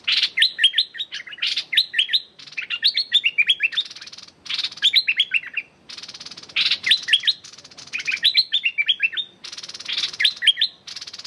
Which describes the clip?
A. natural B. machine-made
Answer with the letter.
A